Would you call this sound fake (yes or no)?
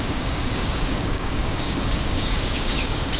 yes